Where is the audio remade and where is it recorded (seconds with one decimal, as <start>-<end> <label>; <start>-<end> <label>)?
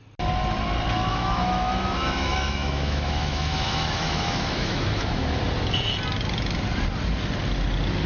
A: 0.0-1.1 recorded; 1.1-5.4 remade; 5.4-8.1 recorded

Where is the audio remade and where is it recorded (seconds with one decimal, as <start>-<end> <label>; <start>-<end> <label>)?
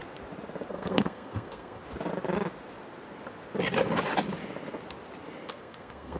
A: 0.0-0.7 recorded; 0.7-1.8 remade; 1.8-5.5 recorded; 5.5-6.2 remade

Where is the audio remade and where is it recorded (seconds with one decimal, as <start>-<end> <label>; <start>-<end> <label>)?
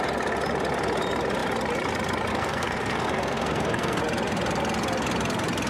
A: 0.0-2.3 recorded; 2.3-4.0 remade; 4.0-5.7 recorded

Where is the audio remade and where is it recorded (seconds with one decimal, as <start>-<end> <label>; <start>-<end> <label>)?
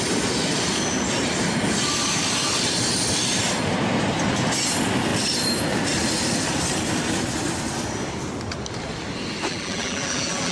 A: 0.0-9.5 recorded; 9.5-10.5 remade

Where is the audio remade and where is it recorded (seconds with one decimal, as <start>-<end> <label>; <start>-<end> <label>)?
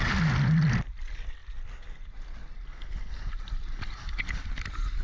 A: 0.0-5.0 recorded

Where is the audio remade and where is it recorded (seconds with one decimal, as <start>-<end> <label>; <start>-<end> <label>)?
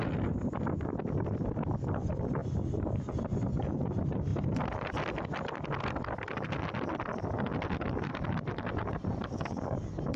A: 0.0-10.2 recorded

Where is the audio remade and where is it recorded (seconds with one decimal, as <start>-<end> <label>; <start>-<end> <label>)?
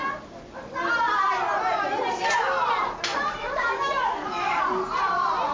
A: 0.0-3.1 recorded; 3.1-4.6 remade; 4.6-5.5 recorded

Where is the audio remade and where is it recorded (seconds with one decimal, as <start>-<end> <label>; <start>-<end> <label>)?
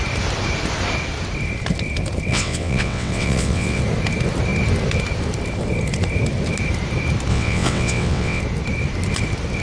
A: 0.0-2.3 recorded; 2.3-3.8 remade; 3.8-7.3 recorded; 7.3-8.4 remade; 8.4-9.6 recorded